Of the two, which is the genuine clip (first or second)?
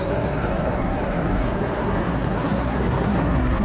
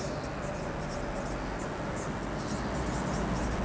second